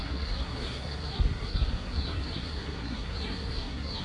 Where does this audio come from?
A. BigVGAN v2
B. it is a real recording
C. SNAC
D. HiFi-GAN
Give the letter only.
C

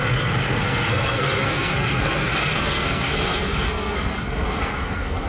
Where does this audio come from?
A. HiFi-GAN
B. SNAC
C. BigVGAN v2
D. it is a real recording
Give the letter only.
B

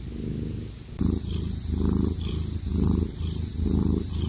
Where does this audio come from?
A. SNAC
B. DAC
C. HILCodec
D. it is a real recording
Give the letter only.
D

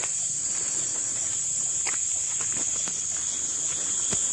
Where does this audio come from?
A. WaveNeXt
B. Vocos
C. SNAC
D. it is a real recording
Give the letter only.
D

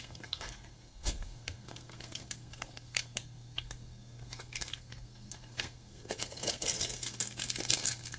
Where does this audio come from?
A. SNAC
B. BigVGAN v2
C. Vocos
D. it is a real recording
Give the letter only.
A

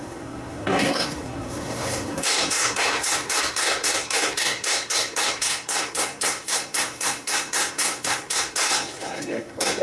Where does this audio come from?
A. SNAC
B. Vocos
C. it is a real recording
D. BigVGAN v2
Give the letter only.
A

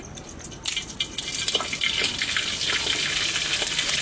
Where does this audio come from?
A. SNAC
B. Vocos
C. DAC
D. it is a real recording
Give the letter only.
D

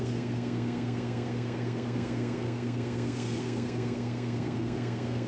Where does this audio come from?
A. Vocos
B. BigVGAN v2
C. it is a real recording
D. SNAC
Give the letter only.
D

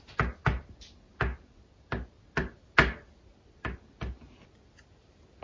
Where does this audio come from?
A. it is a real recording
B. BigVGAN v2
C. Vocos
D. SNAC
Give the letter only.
A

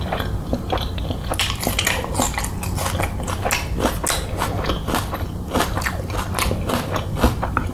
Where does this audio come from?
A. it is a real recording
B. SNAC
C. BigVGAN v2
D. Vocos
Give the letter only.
A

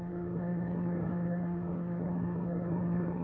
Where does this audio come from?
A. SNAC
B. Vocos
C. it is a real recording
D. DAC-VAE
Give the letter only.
A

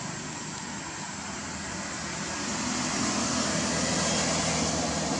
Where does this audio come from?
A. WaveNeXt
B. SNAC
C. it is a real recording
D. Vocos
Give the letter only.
C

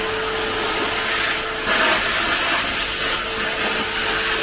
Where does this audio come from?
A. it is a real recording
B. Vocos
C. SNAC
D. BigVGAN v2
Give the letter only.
A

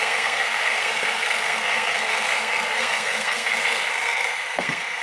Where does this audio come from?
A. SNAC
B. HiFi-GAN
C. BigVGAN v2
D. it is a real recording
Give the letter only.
A